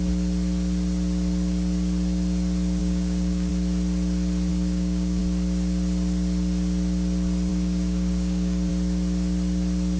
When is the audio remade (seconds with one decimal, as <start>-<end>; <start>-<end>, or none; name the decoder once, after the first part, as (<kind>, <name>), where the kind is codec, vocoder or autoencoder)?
2.8-3.5 (codec, DAC); 4.5-5.2; 7.5-8.7